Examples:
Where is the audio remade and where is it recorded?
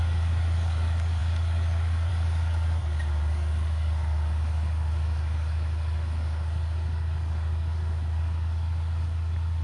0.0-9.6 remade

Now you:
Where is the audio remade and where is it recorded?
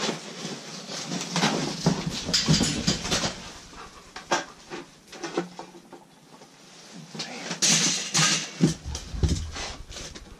0.0-0.7 recorded; 0.7-1.3 remade; 1.3-10.4 recorded